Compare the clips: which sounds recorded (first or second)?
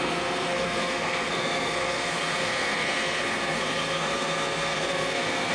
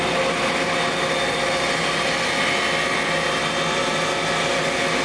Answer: second